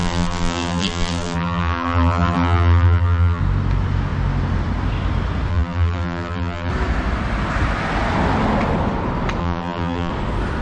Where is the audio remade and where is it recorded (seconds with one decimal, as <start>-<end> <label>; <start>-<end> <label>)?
0.0-3.4 remade; 3.4-5.5 recorded; 5.5-6.7 remade; 6.7-9.4 recorded; 9.4-10.1 remade; 10.1-10.6 recorded